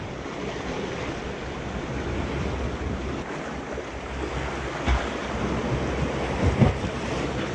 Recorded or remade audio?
recorded